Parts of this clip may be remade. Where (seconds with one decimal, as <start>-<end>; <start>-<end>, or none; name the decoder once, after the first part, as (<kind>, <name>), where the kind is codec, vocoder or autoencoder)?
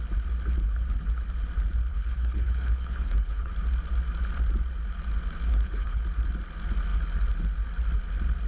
1.9-3.5 (codec, HILCodec); 5.5-6.0